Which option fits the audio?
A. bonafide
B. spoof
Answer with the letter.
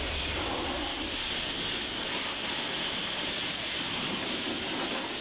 A